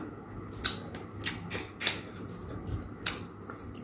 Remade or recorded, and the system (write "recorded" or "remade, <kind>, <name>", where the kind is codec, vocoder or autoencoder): recorded